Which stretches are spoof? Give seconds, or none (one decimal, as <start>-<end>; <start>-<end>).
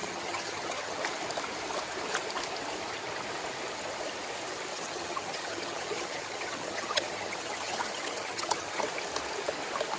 0.0-1.0; 4.7-8.8